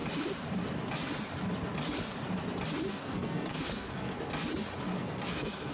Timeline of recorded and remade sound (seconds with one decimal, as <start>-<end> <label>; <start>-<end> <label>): 0.0-2.9 recorded; 2.9-4.2 remade; 4.2-4.9 recorded; 4.9-5.7 remade